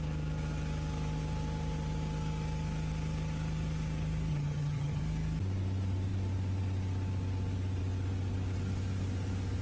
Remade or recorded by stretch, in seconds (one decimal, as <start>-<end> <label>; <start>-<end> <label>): 0.0-4.3 recorded; 4.3-5.0 remade; 5.0-9.6 recorded